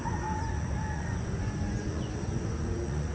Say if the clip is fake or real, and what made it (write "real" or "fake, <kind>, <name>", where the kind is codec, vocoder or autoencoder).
fake, vocoder, Vocos